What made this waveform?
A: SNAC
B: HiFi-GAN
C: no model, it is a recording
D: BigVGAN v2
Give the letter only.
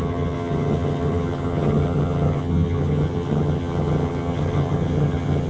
B